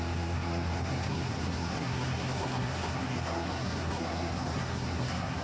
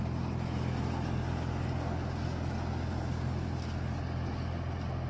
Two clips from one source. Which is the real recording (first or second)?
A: second